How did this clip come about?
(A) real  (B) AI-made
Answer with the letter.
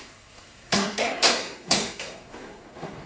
B